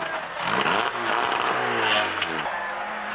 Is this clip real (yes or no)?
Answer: yes